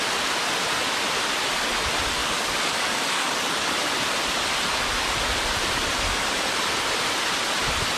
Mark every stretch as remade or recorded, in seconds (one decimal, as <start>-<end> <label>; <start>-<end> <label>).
0.0-2.2 recorded; 2.2-3.7 remade; 3.7-8.0 recorded